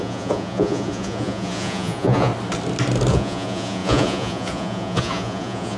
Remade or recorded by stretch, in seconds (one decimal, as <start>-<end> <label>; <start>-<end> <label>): 0.0-2.3 remade; 2.3-3.1 recorded; 3.1-5.8 remade